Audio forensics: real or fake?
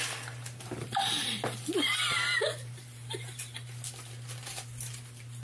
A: fake